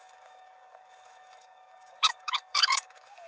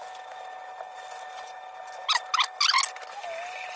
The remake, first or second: first